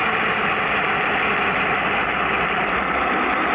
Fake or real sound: real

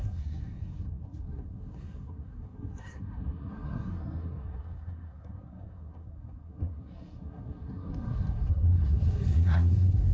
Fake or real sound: fake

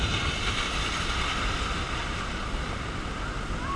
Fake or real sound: fake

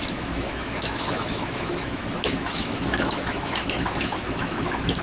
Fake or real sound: fake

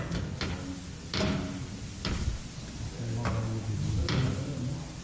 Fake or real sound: real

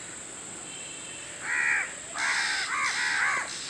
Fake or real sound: real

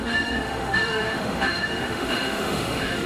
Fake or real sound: fake